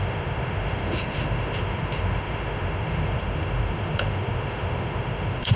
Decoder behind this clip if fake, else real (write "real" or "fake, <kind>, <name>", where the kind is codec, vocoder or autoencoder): fake, autoencoder, DAC-VAE